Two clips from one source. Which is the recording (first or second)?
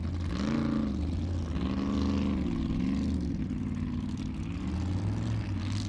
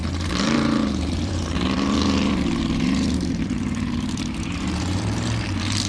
first